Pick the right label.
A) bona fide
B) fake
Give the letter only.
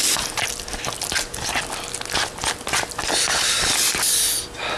A